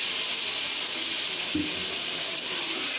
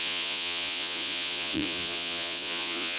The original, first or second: first